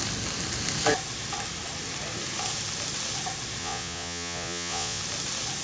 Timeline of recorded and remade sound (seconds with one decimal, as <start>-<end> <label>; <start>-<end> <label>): 0.0-3.6 recorded; 3.6-5.0 remade; 5.0-5.6 recorded